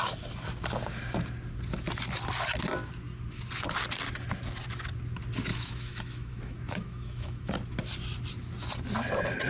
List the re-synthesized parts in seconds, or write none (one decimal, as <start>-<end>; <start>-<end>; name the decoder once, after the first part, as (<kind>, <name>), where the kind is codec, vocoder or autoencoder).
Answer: 5.5-7.5 (autoencoder, DAC-VAE)